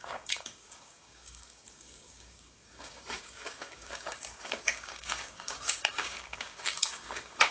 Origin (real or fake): fake